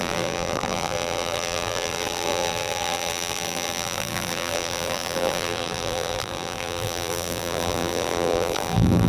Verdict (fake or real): fake